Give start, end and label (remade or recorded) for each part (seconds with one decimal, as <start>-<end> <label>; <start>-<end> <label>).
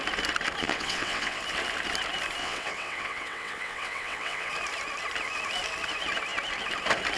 0.0-0.6 recorded; 0.6-1.4 remade; 1.4-2.4 recorded; 2.4-4.5 remade; 4.5-7.2 recorded